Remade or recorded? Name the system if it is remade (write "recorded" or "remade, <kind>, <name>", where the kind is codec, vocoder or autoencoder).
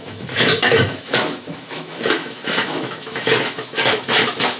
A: remade, autoencoder, DAC-VAE